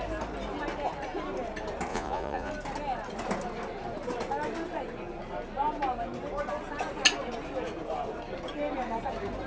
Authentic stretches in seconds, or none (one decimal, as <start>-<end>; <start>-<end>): 0.0-1.9; 2.5-9.5